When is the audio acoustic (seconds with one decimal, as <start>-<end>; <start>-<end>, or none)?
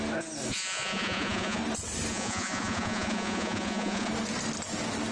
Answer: 0.0-0.5; 1.6-2.1; 4.1-5.1